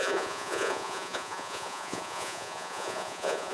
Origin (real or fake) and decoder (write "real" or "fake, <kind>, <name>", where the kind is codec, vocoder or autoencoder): fake, vocoder, Vocos